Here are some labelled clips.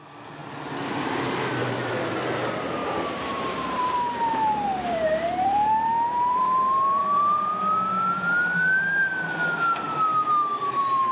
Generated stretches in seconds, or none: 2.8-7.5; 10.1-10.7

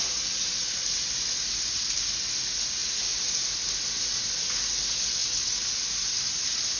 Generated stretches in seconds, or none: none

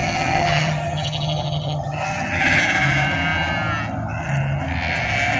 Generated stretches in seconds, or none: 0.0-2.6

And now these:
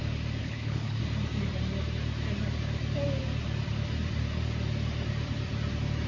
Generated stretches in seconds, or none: 0.4-1.0

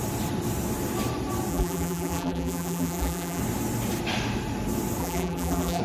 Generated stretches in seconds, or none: 1.5-3.4; 5.0-5.8

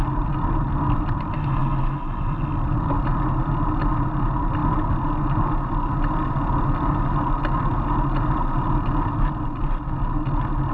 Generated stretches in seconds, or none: none